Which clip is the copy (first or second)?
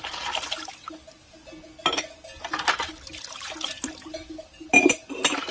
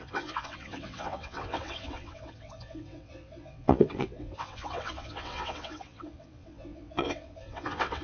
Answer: second